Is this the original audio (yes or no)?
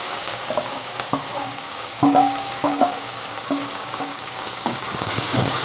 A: no